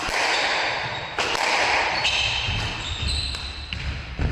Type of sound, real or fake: real